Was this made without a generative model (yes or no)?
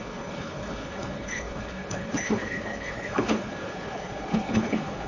no